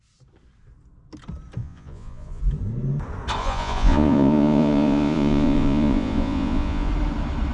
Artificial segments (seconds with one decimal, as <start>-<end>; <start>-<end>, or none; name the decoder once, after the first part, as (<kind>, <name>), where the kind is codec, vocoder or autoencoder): 1.6-2.4 (vocoder, Vocos); 3.4-6.9